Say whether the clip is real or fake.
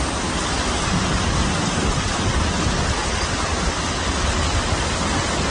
real